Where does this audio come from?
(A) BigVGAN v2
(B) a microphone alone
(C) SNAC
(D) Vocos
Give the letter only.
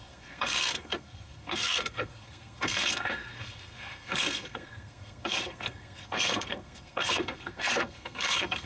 C